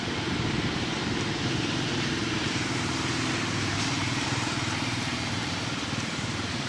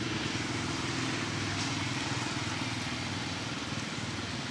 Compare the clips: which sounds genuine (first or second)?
second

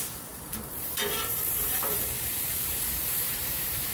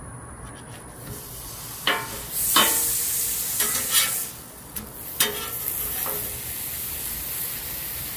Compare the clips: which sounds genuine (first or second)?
second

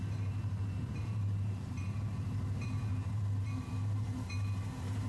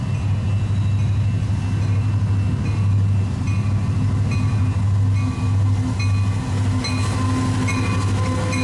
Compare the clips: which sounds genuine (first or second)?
second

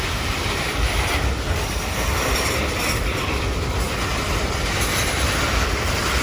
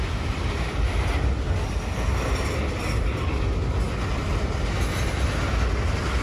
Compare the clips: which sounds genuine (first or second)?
second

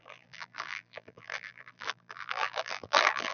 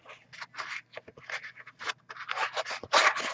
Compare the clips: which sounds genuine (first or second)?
second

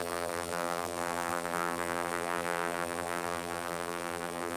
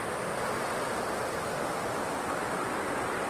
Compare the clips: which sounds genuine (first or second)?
second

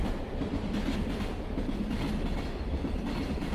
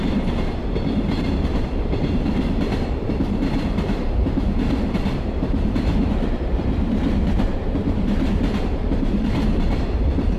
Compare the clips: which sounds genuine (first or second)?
first